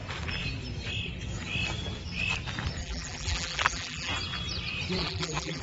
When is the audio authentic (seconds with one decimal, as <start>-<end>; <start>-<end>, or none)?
0.0-2.8; 4.1-5.0